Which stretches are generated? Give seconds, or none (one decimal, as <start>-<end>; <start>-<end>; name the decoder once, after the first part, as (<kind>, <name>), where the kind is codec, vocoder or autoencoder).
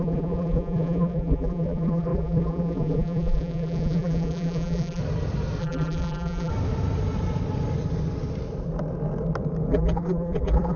0.0-5.0 (vocoder, BigVGAN v2); 5.6-6.5; 9.7-10.8